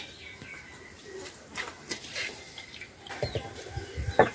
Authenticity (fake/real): real